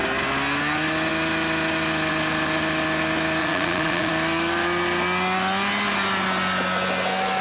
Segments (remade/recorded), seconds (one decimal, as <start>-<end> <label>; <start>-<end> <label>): 0.0-3.4 recorded; 3.4-4.1 remade; 4.1-7.4 recorded